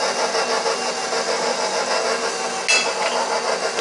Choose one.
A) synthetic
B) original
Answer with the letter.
B